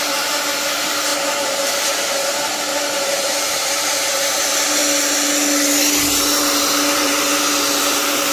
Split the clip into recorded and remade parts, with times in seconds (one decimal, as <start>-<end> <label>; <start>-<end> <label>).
0.0-4.8 remade; 4.8-6.7 recorded; 6.7-7.3 remade; 7.3-7.8 recorded; 7.8-8.3 remade